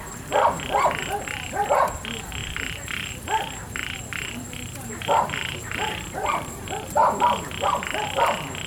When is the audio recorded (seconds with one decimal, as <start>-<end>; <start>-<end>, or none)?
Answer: 0.0-2.4; 6.5-8.7